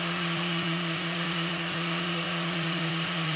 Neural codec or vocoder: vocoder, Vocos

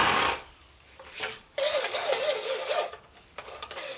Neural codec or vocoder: codec, DAC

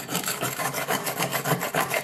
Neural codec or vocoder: codec, DAC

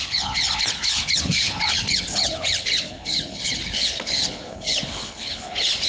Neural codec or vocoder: codec, HILCodec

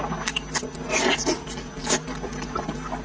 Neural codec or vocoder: none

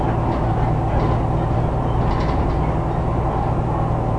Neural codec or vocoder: none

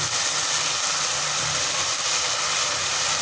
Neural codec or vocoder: none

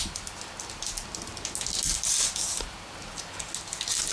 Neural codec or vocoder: none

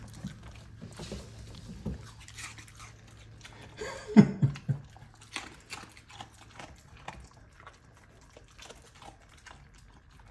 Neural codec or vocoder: none